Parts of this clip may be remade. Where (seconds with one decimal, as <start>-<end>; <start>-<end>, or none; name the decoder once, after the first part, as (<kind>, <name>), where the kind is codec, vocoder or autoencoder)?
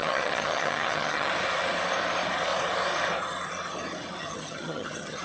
0.0-1.3 (vocoder, HiFi-GAN); 4.2-5.2